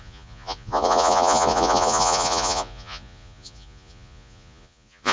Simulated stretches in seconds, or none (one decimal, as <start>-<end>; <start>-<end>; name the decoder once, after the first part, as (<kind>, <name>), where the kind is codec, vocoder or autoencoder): 0.0-5.1 (vocoder, Vocos)